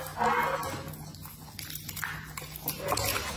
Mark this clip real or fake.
real